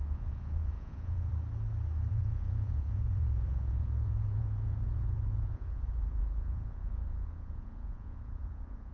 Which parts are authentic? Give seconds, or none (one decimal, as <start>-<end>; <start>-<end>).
1.3-2.1